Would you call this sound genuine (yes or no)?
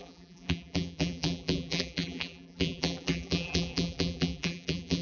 no